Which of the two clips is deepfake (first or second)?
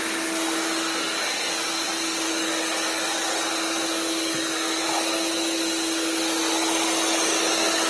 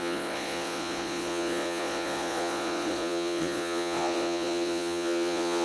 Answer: second